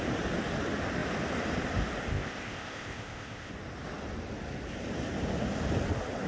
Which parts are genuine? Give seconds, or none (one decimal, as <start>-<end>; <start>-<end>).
0.0-2.1; 3.5-6.3